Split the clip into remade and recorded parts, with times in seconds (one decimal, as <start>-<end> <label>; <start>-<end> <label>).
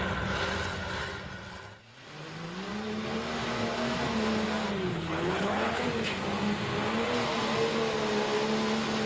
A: 0.0-4.9 recorded; 4.9-5.8 remade; 5.8-9.1 recorded